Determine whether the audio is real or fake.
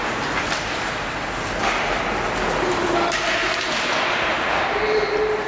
real